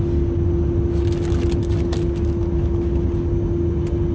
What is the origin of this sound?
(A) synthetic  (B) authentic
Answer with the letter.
B